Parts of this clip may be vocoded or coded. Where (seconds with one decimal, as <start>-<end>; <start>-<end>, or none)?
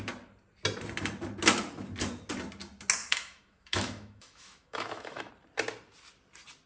3.0-5.3